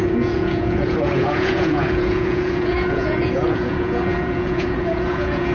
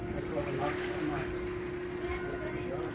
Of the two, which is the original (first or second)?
second